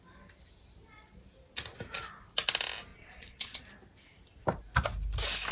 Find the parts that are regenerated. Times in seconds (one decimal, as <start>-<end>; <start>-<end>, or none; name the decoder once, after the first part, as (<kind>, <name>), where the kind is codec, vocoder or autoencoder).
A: 2.9-3.6 (vocoder, Vocos)